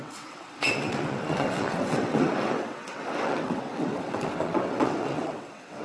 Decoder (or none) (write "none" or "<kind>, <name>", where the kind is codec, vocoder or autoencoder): vocoder, WaveNeXt